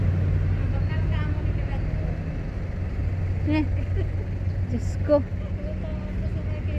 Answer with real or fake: real